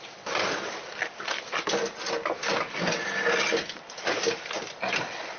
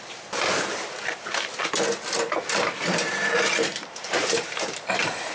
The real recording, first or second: first